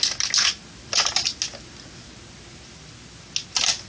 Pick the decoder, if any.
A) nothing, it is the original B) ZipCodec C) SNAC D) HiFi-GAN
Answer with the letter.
A